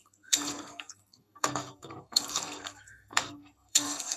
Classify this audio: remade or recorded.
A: remade